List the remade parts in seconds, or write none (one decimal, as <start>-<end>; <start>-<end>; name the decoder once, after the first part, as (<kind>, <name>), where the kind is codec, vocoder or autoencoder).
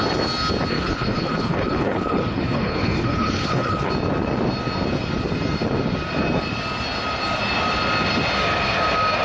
0.7-3.9 (codec, HILCodec)